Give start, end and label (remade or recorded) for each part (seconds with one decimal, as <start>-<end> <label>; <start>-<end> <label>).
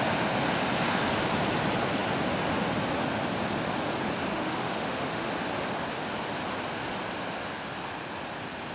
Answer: 0.0-4.3 recorded; 4.3-5.3 remade; 5.3-8.7 recorded